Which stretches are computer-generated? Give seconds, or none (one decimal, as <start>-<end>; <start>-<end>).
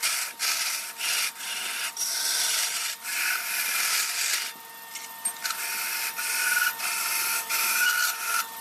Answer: 7.3-7.9